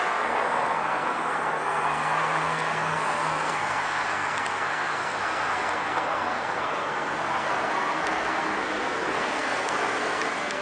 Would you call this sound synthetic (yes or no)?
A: yes